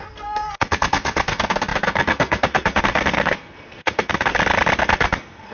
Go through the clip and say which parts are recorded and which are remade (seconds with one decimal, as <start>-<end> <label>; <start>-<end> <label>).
0.0-4.3 remade; 4.3-4.8 recorded; 4.8-5.5 remade

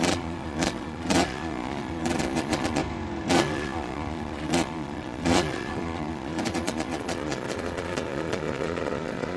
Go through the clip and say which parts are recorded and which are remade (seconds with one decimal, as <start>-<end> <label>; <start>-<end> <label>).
0.0-2.8 remade; 2.8-3.3 recorded; 3.3-9.4 remade

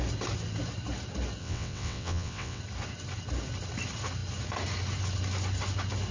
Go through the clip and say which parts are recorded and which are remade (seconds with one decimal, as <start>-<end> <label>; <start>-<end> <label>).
0.0-1.4 recorded; 1.4-2.6 remade; 2.6-6.1 recorded

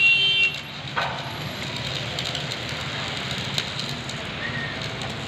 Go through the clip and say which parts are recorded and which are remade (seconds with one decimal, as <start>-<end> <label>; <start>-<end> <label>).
0.0-0.5 recorded; 0.5-1.7 remade; 1.7-5.3 recorded